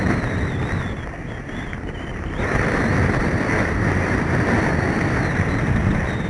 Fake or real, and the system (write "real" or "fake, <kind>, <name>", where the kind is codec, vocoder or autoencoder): fake, vocoder, BigVGAN v2